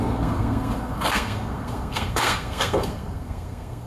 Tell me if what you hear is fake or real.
fake